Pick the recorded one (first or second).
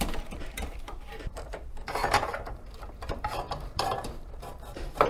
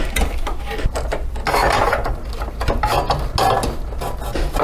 second